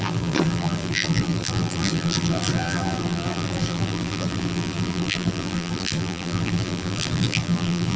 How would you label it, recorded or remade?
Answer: remade